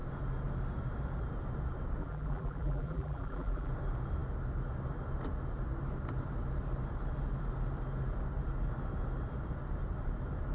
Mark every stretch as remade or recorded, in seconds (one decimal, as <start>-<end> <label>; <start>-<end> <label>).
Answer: 0.0-2.0 recorded; 2.0-3.7 remade; 3.7-10.5 recorded